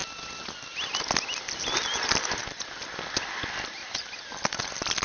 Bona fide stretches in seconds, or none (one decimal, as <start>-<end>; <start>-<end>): 0.0-5.0